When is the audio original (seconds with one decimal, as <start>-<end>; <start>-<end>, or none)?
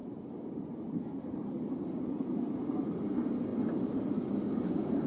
3.1-5.1